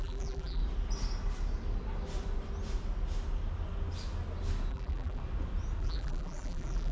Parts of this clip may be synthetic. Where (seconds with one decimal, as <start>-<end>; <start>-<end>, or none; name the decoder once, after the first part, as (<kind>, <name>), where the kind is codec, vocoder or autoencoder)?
0.0-0.6 (vocoder, BigVGAN v2); 4.7-5.2; 5.8-6.9